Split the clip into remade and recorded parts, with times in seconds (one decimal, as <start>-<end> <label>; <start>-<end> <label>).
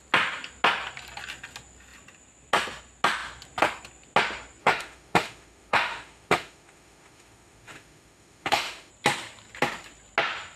0.0-4.6 recorded; 4.6-8.9 remade; 8.9-10.6 recorded